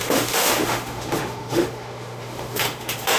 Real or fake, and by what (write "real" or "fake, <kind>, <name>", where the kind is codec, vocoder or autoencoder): fake, autoencoder, DAC-VAE